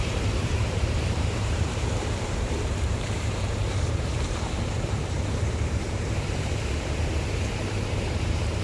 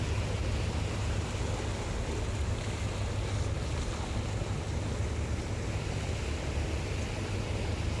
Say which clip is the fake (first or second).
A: first